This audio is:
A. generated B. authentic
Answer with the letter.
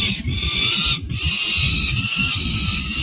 B